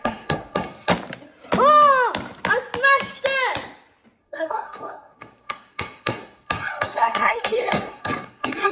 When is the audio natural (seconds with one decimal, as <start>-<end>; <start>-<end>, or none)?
0.9-4.2